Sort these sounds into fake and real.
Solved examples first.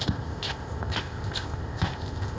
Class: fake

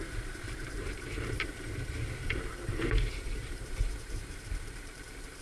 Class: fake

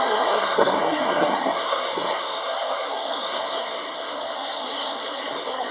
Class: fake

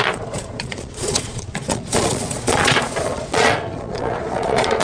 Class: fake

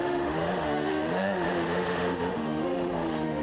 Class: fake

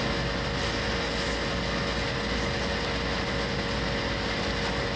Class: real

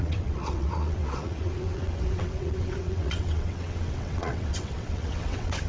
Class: fake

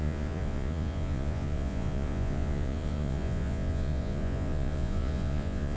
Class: fake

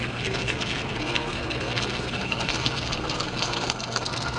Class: fake